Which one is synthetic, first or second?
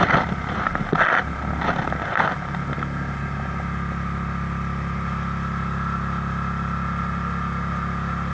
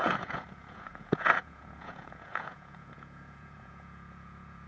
second